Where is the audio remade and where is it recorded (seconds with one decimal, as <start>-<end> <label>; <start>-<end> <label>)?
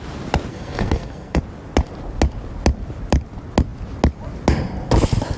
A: 0.0-0.5 recorded; 0.5-1.4 remade; 1.4-5.4 recorded